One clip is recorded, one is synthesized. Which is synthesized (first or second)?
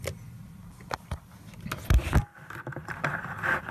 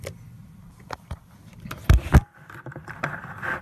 second